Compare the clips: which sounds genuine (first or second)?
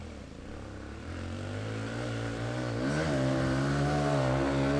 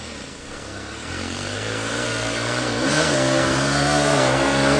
first